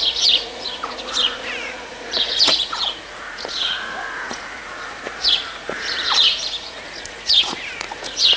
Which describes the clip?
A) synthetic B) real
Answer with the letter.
A